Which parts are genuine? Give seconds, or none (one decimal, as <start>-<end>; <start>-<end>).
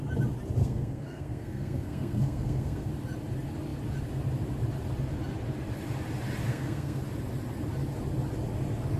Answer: 0.0-0.6; 2.9-6.5; 7.0-9.0